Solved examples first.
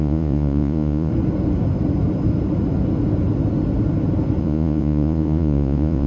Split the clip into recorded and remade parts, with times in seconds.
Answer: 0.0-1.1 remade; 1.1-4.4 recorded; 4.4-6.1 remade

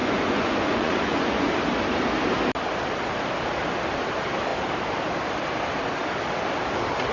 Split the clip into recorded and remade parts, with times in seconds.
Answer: 0.0-1.5 remade; 1.5-7.1 recorded